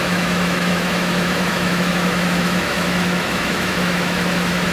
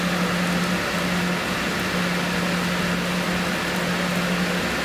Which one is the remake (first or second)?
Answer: first